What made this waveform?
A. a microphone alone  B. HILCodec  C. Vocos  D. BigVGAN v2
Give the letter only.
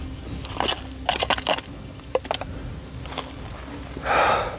A